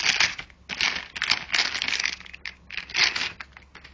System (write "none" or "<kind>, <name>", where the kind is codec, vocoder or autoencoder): none